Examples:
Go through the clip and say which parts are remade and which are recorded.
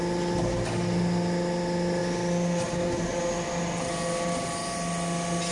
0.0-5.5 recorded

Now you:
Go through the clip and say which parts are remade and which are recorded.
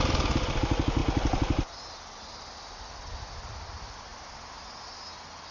0.0-5.5 recorded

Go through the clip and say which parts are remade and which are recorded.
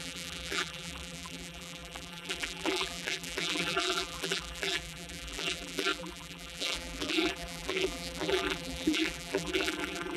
0.0-10.2 remade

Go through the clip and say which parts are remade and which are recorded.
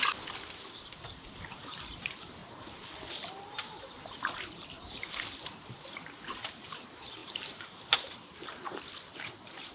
0.0-9.7 remade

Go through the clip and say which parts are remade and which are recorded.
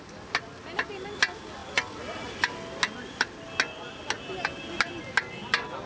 0.0-5.9 recorded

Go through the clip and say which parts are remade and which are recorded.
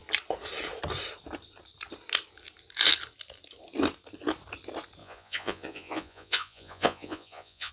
0.0-5.0 recorded; 5.0-7.7 remade